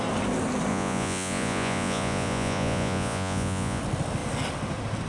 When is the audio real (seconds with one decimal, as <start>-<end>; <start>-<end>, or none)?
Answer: 0.0-0.7; 3.8-5.1